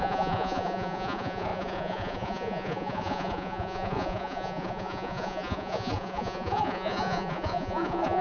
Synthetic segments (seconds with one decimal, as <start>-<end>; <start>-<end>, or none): 0.0-8.2

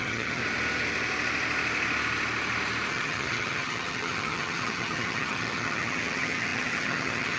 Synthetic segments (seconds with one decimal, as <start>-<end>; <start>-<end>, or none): 0.0-0.4; 2.9-7.4